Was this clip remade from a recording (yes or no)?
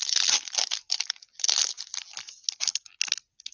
no